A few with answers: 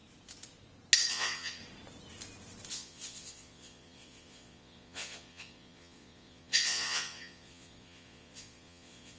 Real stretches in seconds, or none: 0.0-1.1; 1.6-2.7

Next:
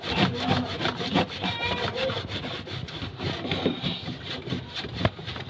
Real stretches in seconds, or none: 0.0-5.5

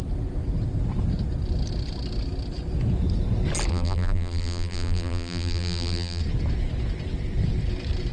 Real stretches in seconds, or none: 0.0-3.7; 6.2-8.1